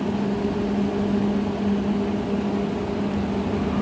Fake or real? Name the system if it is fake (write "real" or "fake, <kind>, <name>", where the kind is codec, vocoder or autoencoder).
real